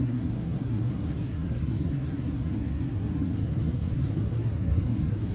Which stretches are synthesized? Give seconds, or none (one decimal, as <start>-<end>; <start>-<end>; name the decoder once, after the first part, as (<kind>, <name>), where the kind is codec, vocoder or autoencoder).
0.0-5.3 (codec, SNAC)